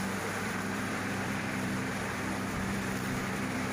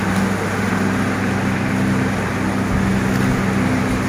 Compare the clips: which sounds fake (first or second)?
first